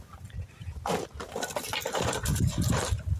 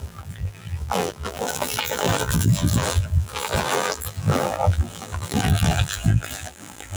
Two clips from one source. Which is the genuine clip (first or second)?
first